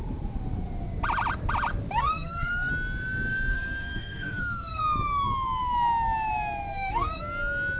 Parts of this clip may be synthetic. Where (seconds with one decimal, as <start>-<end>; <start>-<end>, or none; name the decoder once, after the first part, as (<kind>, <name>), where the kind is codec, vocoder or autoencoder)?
2.0-2.7 (codec, SNAC); 3.5-4.8; 6.7-7.2